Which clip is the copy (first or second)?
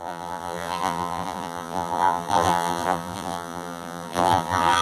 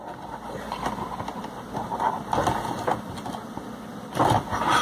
first